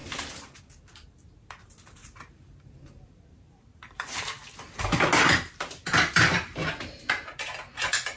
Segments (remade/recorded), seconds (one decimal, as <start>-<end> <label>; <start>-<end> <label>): 0.0-2.0 recorded; 2.0-4.3 remade; 4.3-8.2 recorded